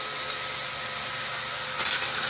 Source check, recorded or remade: recorded